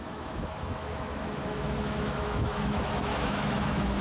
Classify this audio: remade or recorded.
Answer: remade